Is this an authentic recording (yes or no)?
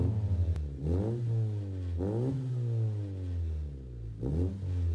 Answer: yes